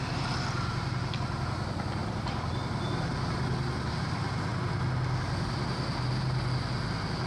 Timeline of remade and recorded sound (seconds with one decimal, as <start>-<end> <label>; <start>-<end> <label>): 0.0-2.0 recorded; 2.0-2.6 remade; 2.6-7.3 recorded